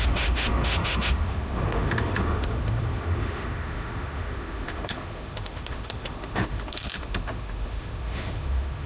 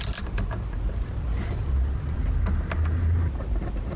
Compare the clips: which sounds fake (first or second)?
first